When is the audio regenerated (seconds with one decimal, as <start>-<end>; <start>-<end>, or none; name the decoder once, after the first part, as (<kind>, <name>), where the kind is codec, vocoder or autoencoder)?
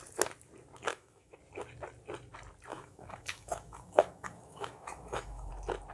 0.9-1.4 (autoencoder, DAC-VAE); 2.7-5.5